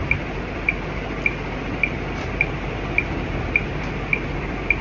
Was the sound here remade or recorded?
recorded